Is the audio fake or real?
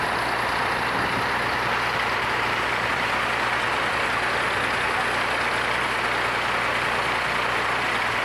real